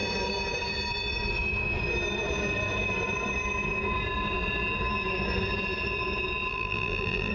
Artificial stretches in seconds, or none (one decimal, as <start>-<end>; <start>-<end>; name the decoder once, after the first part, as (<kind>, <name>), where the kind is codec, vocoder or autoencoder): 6.5-7.3 (vocoder, BigVGAN v2)